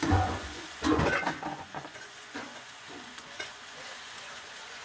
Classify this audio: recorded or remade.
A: remade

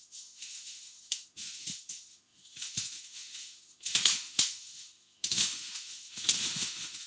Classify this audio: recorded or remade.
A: remade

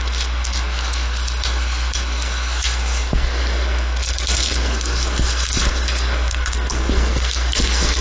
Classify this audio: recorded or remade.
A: remade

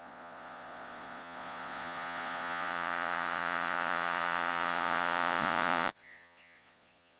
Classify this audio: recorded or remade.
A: remade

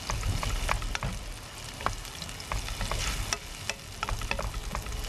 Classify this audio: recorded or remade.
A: recorded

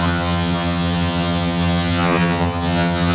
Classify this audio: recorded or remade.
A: remade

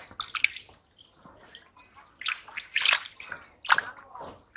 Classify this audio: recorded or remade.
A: recorded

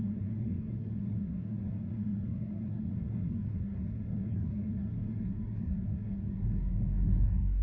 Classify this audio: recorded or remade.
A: remade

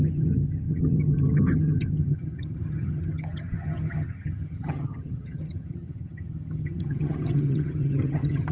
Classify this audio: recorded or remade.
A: remade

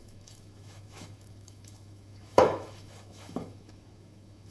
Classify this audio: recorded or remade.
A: remade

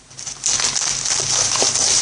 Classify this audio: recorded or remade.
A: recorded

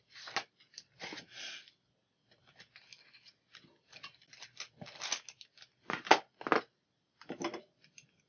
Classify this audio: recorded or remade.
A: recorded